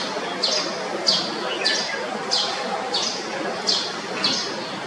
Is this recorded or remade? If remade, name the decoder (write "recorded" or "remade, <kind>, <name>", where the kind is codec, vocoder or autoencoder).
recorded